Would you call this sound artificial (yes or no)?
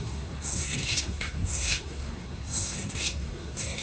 yes